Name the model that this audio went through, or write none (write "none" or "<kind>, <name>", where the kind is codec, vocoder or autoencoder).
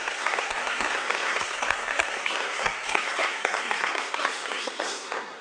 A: codec, SNAC